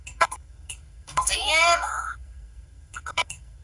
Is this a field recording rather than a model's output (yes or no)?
no